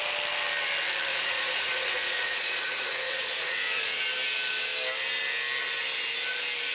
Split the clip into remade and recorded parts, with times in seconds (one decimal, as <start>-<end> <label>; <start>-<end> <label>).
0.0-1.1 recorded; 1.1-4.0 remade; 4.0-6.7 recorded